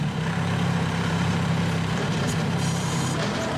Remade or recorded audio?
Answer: remade